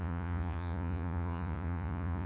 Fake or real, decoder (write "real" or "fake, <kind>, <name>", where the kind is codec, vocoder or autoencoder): fake, vocoder, Vocos